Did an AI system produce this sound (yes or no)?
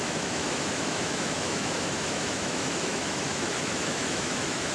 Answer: yes